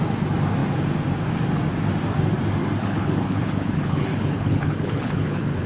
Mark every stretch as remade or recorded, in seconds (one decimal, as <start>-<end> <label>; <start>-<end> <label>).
0.0-2.8 recorded; 2.8-5.7 remade